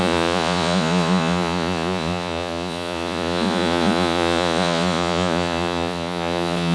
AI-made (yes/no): yes